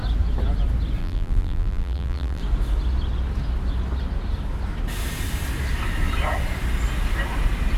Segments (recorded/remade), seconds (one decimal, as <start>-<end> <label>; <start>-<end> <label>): 0.0-1.0 recorded; 1.0-2.4 remade; 2.4-7.8 recorded